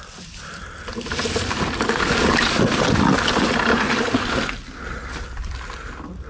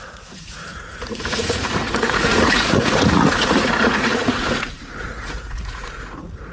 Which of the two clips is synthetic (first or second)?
second